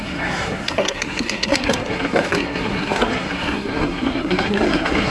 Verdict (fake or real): fake